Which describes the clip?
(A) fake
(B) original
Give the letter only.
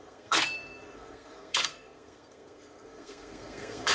A